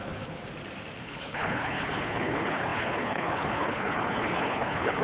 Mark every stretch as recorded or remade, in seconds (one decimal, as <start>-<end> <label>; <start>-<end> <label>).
0.0-0.4 remade; 0.4-1.0 recorded; 1.0-5.0 remade